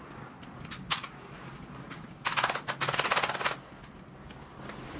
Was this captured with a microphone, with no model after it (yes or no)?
yes